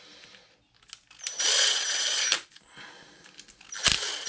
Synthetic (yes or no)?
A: no